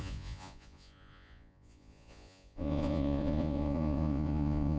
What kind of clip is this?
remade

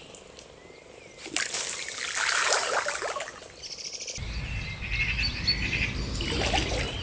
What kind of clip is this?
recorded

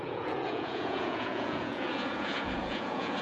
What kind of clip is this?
remade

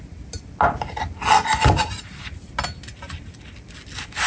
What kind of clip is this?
recorded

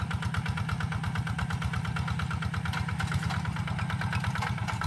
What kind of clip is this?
recorded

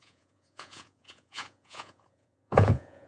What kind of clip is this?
remade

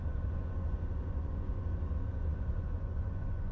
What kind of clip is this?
remade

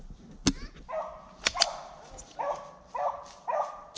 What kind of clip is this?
recorded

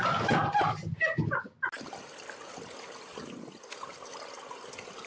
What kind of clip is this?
recorded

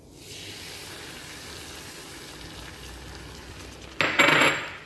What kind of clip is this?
recorded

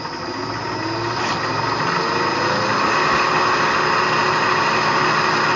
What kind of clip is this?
recorded